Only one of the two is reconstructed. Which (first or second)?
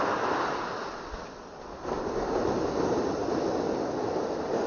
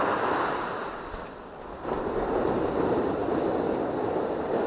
second